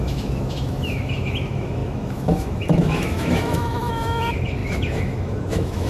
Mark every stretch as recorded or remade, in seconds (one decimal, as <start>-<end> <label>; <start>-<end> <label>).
0.0-5.9 remade

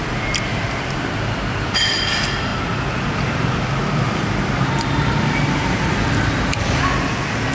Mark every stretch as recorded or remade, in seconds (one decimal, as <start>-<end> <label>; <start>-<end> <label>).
0.0-7.5 remade

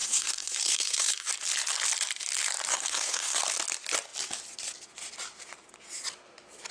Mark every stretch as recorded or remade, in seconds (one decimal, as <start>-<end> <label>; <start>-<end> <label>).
0.0-1.3 remade; 1.3-2.7 recorded; 2.7-3.4 remade; 3.4-6.7 recorded

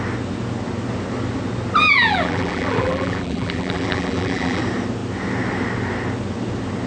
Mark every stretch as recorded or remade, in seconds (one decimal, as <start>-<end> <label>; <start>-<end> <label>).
0.0-1.8 recorded; 1.8-4.6 remade; 4.6-6.9 recorded

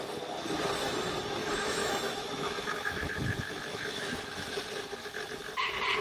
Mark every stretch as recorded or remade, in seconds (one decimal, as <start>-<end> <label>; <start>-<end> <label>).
0.0-1.4 recorded; 1.4-4.5 remade; 4.5-6.0 recorded

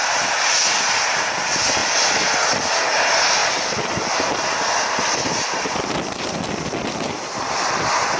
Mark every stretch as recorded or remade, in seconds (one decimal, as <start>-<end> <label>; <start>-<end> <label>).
0.0-8.2 recorded

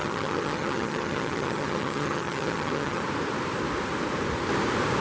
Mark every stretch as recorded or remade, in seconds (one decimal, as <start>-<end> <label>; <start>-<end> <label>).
0.0-3.0 remade; 3.0-5.0 recorded